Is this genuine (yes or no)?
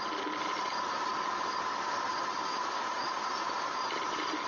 yes